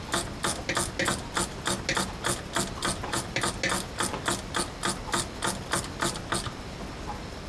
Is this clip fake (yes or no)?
no